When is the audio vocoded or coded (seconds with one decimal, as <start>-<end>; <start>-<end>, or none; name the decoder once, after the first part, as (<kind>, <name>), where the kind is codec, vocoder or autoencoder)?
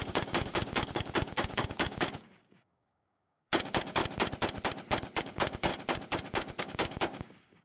0.0-4.0 (codec, DAC); 5.2-5.7; 6.6-7.6